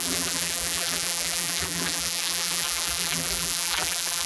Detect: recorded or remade remade